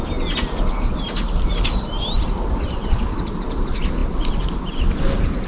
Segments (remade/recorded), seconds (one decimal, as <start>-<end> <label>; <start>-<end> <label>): 0.0-5.5 recorded